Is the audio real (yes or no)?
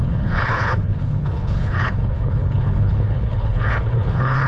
no